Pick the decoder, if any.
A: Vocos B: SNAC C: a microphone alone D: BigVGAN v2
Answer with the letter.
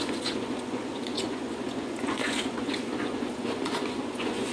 A